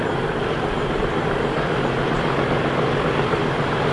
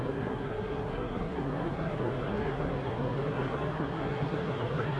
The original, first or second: first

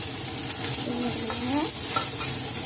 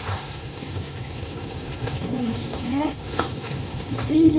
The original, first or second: first